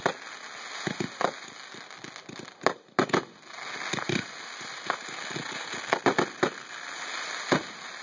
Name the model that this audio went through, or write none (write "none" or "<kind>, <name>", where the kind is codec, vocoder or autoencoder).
none